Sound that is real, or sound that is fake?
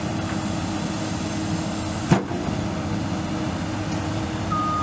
real